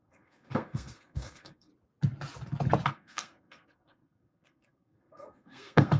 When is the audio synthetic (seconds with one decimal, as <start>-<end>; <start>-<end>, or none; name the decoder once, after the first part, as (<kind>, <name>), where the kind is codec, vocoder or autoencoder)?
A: 0.0-1.7 (codec, SNAC); 2.9-6.0